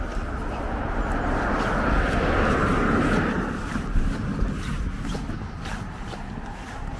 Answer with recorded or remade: recorded